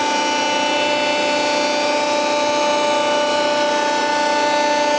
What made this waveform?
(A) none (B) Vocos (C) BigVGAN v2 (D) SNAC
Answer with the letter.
A